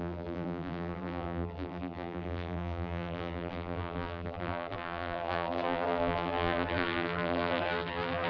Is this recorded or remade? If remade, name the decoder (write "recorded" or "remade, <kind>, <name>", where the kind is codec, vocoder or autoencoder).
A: remade, vocoder, BigVGAN v2